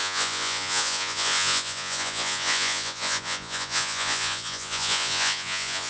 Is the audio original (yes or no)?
no